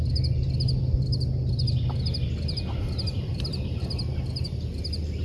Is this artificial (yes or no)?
no